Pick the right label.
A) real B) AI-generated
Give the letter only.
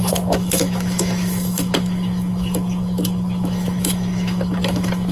B